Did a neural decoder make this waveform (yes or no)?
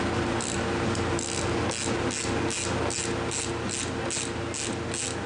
no